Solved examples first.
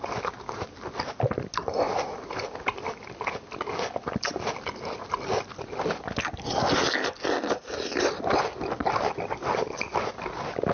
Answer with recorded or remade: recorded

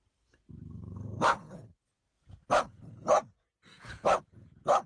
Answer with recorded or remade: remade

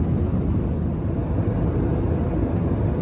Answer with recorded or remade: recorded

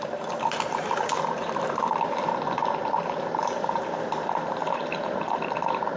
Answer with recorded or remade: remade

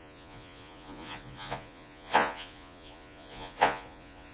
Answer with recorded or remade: remade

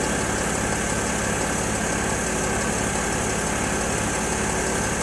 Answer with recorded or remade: recorded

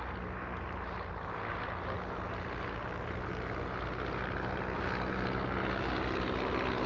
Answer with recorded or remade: recorded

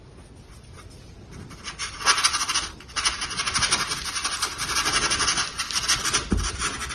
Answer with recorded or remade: recorded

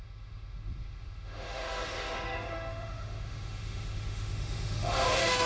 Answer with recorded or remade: remade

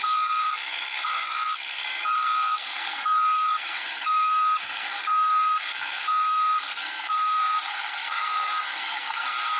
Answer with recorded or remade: remade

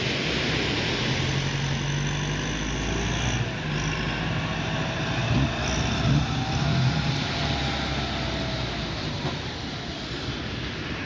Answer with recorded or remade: recorded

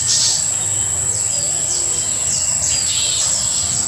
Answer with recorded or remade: recorded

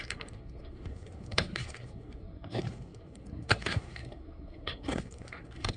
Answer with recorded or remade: remade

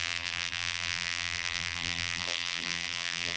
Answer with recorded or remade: remade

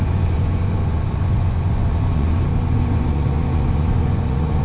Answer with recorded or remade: remade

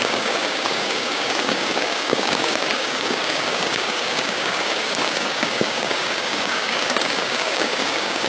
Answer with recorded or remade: remade